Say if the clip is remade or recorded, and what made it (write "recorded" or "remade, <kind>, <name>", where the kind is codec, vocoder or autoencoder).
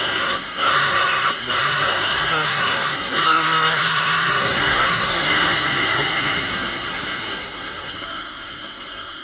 remade, codec, SNAC